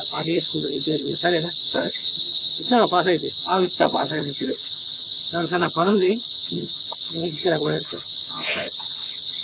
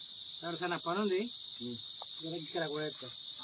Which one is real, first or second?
second